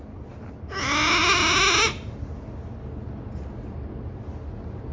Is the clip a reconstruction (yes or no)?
no